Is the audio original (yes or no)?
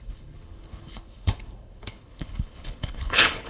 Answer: no